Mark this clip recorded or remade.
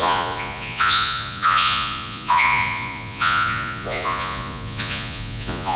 remade